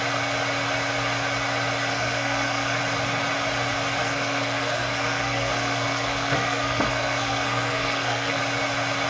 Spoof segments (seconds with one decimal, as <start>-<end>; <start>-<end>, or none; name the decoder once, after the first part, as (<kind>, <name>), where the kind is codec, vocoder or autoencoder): 1.9-2.8 (codec, SNAC); 4.0-8.4